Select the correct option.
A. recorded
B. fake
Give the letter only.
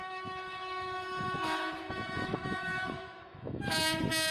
B